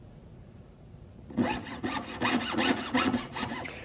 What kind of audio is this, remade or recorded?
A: remade